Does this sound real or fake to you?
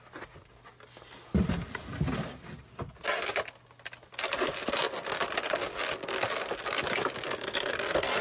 real